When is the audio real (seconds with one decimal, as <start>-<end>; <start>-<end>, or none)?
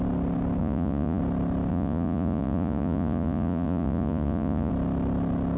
0.0-0.6; 1.2-1.7; 4.7-5.6